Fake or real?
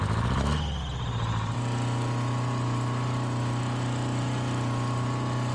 real